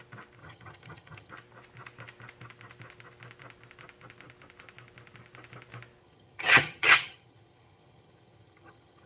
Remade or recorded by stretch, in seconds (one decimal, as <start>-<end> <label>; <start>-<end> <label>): 0.0-0.4 recorded; 0.4-1.3 remade; 1.3-6.0 recorded; 6.0-9.1 remade